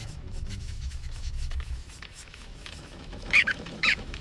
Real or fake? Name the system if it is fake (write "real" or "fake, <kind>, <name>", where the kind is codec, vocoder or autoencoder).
fake, autoencoder, DAC-VAE